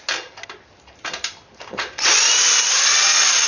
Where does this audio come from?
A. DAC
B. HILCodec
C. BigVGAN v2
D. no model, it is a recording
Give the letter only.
D